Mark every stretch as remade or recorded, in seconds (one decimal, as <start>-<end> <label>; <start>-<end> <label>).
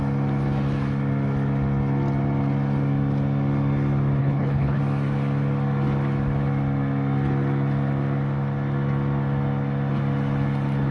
0.0-4.2 recorded; 4.2-4.8 remade; 4.8-10.9 recorded